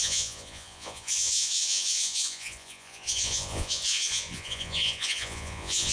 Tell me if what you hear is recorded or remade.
remade